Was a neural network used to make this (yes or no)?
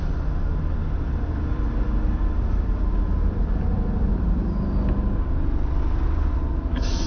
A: yes